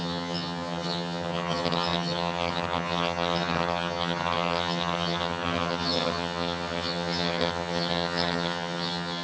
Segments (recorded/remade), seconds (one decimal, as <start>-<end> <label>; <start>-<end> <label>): 0.0-9.2 remade